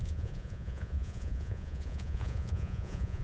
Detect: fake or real fake